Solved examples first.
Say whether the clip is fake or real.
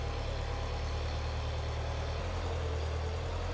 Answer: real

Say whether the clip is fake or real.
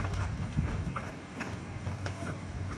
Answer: fake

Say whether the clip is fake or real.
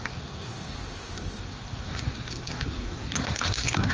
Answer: fake